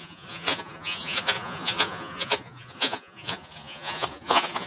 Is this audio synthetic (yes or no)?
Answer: yes